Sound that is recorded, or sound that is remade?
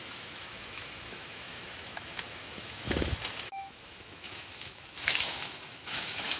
remade